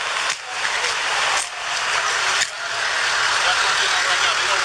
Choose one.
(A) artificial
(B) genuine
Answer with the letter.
B